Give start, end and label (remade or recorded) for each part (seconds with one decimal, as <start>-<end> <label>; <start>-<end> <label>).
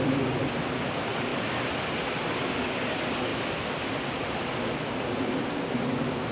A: 0.0-6.3 recorded